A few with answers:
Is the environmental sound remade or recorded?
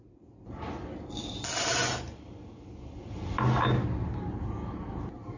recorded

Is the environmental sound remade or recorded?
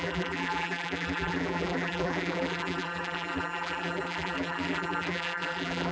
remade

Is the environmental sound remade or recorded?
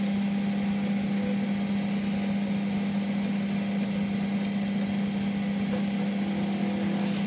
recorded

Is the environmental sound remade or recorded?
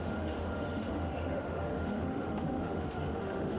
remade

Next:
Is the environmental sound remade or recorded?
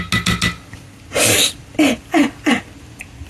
recorded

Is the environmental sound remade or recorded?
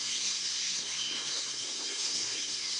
remade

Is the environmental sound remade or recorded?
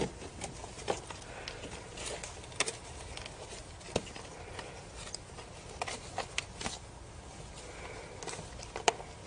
recorded